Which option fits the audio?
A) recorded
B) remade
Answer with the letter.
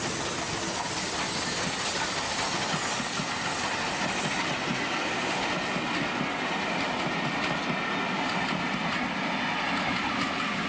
A